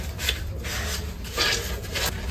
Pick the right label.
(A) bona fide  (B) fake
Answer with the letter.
A